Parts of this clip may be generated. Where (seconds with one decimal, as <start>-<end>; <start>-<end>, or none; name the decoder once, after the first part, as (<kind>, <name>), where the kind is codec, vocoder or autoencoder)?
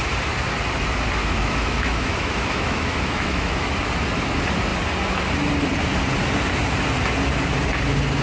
1.2-3.8 (autoencoder, DAC-VAE)